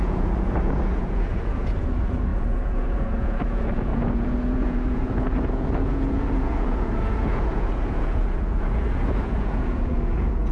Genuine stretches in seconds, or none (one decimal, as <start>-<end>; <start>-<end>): none